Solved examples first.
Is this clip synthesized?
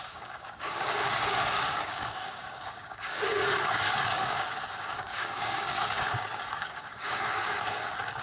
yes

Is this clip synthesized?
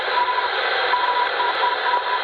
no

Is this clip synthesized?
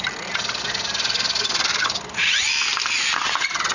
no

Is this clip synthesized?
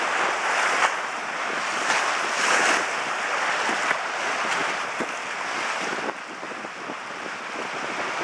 no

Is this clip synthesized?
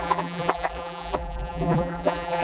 yes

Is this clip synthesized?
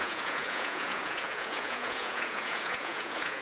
yes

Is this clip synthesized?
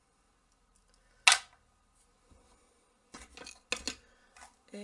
no